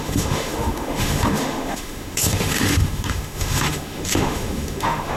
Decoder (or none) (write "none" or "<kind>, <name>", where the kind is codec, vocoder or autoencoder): autoencoder, DAC-VAE